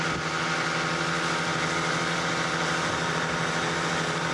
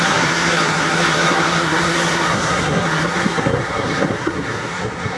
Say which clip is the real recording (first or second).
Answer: first